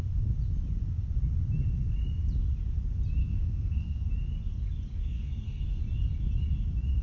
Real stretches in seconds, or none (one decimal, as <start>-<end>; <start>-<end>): 0.0-3.2; 4.1-5.0; 5.8-7.0